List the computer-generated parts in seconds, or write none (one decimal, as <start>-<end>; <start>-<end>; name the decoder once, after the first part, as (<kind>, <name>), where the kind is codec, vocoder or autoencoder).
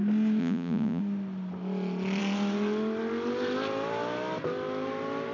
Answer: 0.4-1.0 (vocoder, Vocos)